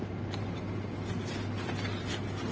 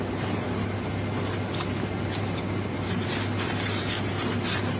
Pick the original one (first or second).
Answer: first